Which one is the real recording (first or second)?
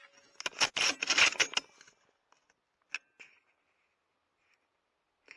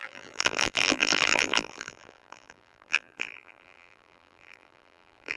first